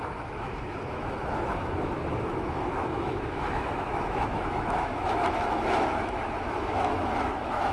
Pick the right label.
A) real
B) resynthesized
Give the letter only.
B